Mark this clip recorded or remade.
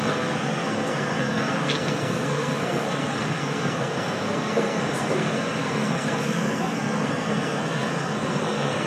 remade